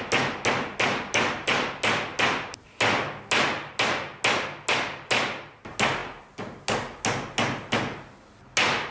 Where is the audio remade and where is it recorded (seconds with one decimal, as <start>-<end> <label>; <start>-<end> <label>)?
0.0-8.9 recorded